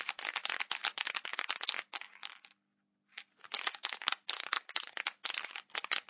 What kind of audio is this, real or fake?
real